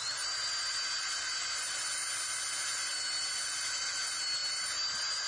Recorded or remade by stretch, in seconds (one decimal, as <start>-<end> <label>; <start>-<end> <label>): 0.0-5.3 recorded